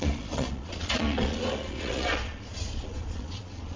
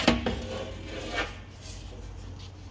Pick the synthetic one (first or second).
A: first